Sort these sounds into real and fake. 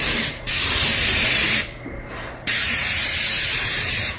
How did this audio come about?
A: fake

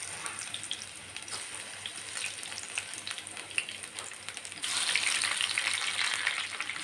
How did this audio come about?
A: fake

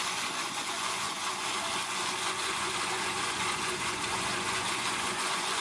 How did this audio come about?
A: fake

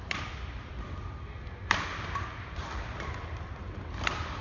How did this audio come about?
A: real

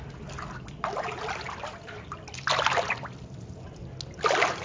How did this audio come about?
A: real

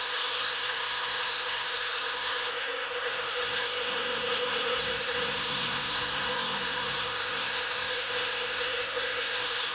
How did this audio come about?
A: fake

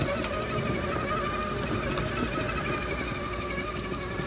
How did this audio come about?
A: real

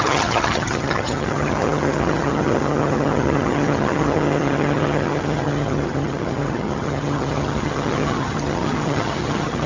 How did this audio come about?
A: fake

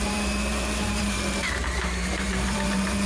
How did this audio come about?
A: fake